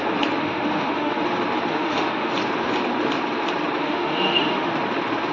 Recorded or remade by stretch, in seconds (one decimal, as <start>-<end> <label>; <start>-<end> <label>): 0.0-0.4 recorded; 0.4-1.2 remade; 1.2-1.7 recorded; 1.7-2.3 remade; 2.3-3.8 recorded; 3.8-4.7 remade; 4.7-5.3 recorded